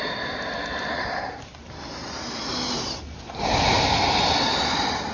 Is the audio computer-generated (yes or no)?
no